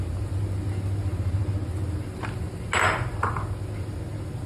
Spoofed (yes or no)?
no